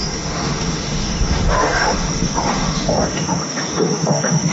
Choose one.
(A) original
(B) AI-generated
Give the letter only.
B